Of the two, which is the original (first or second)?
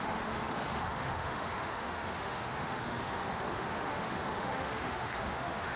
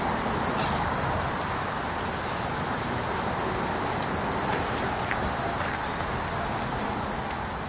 second